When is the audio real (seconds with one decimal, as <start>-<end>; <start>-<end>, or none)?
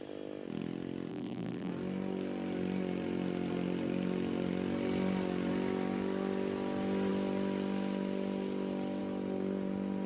0.0-1.1; 1.7-10.1